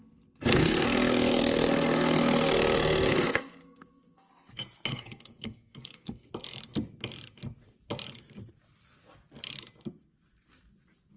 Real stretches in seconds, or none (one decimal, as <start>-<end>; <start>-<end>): 0.0-0.5; 4.3-4.9; 6.3-11.2